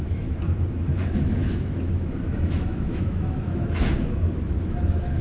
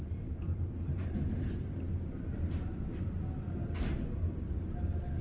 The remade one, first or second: first